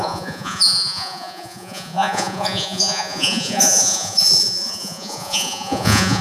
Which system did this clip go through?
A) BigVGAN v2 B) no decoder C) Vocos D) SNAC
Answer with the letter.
C